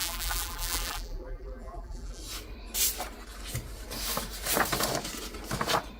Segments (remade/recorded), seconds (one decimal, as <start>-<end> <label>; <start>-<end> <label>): 0.0-2.2 remade; 2.2-6.0 recorded